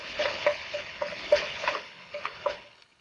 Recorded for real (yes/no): no